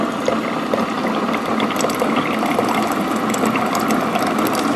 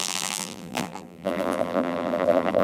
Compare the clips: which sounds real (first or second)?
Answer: first